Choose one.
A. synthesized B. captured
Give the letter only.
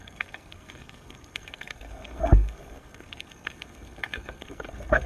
A